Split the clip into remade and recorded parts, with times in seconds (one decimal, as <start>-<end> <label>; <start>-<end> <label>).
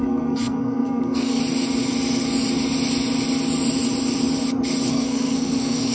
0.0-1.4 remade; 1.4-4.9 recorded; 4.9-5.9 remade